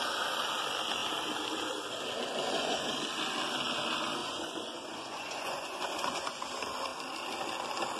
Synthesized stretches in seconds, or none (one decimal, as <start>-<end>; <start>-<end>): 2.4-2.9; 4.2-6.4